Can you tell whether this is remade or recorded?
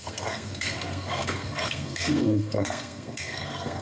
remade